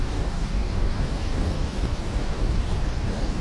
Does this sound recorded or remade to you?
remade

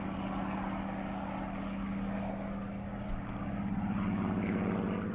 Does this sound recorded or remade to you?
recorded